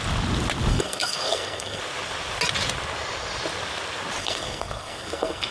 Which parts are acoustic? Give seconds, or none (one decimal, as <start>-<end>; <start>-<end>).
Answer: 0.0-0.7; 1.8-4.2